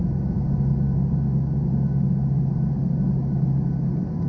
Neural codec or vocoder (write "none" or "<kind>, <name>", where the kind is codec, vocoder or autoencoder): none